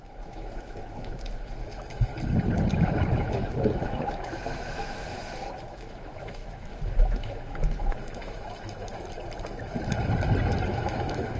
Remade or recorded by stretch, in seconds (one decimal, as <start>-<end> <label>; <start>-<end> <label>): 0.0-2.1 remade; 2.1-2.7 recorded; 2.7-8.9 remade; 8.9-10.7 recorded; 10.7-11.4 remade